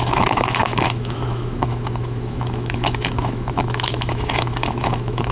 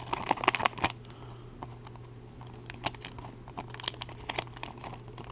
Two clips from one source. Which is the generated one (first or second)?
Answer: first